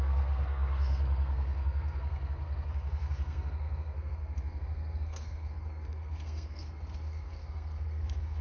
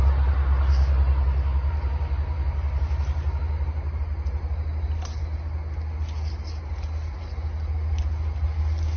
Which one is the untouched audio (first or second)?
second